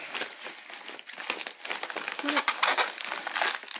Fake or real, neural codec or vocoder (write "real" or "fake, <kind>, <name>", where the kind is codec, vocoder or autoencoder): real